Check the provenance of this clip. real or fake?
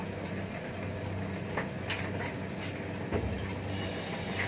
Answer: real